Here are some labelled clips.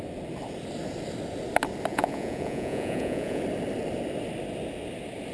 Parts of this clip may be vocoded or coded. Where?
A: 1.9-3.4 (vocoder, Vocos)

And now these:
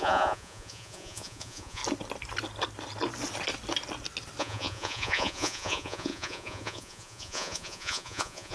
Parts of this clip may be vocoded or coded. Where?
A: 0.0-1.8 (vocoder, Vocos); 4.4-8.5